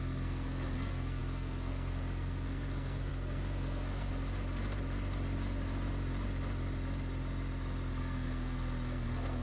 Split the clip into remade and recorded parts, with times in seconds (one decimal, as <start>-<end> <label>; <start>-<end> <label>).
0.0-4.1 remade; 4.1-8.0 recorded; 8.0-9.4 remade